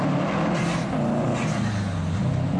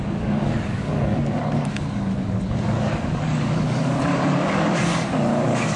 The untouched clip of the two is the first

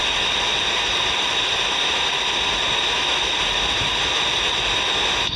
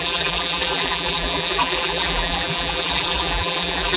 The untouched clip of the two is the first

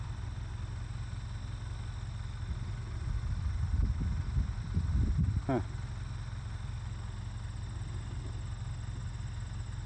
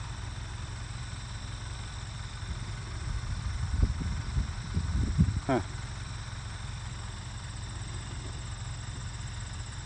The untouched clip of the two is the first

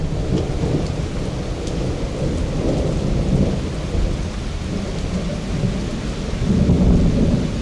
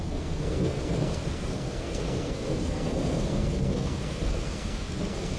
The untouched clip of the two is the first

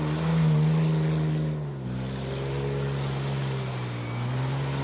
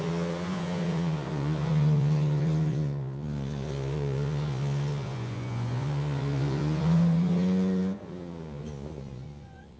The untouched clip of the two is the first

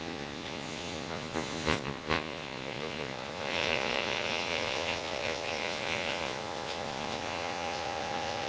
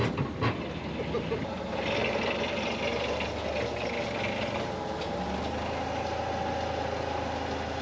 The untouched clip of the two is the second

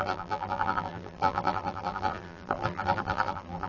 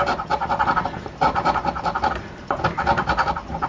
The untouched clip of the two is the second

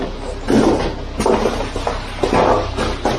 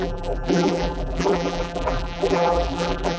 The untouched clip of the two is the first